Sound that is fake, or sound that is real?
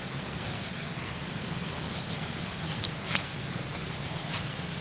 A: fake